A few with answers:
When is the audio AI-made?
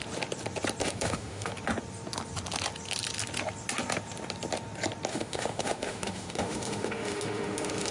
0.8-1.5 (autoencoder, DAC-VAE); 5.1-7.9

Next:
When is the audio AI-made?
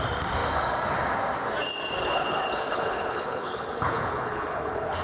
2.0-5.0 (codec, HILCodec)